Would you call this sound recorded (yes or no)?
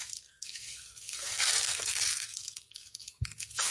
no